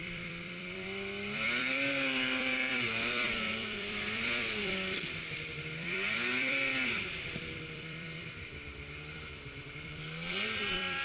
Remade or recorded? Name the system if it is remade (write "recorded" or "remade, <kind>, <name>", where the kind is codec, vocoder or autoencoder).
remade, vocoder, BigVGAN v2